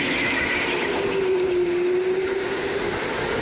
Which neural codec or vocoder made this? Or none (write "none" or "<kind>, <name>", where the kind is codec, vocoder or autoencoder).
none